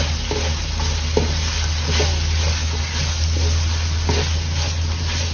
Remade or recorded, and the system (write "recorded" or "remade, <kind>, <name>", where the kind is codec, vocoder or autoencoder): recorded